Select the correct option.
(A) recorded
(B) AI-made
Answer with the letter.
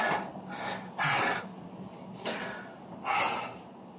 A